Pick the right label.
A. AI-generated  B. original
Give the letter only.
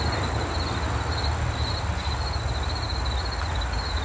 B